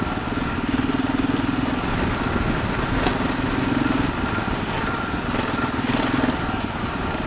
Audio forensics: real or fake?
real